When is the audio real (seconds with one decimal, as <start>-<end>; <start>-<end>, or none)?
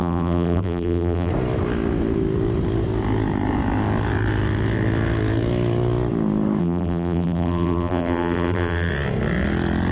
1.3-6.6; 8.9-9.9